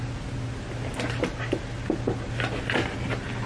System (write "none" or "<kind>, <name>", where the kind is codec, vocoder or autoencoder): none